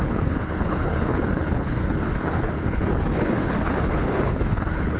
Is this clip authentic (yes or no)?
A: no